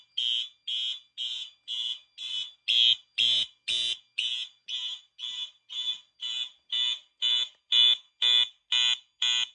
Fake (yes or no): no